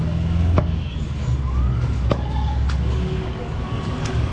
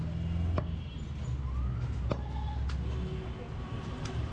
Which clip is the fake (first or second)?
first